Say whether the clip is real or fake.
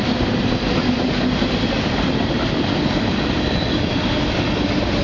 real